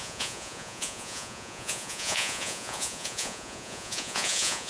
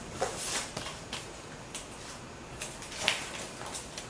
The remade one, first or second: first